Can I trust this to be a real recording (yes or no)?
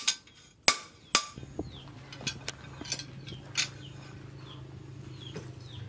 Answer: yes